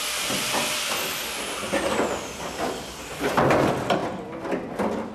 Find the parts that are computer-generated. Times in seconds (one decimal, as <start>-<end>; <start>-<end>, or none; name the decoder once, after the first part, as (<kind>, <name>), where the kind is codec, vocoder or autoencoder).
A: none